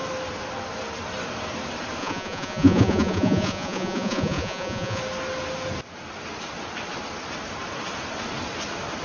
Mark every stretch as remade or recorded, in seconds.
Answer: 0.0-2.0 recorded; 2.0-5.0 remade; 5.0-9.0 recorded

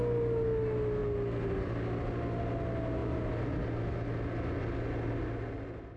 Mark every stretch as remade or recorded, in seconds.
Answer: 0.0-6.0 recorded